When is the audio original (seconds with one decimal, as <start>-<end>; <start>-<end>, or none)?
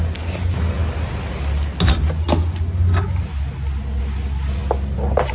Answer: 0.0-5.3